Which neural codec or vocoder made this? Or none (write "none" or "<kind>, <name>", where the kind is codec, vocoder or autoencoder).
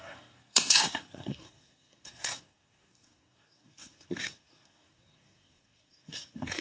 codec, SNAC